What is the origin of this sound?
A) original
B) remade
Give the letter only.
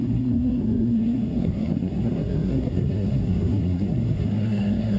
B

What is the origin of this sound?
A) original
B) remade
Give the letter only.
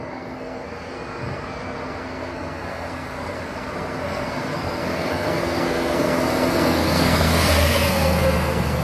B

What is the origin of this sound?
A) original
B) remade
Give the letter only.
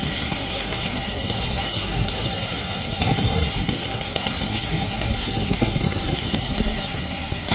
B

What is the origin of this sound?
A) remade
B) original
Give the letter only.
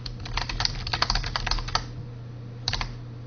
B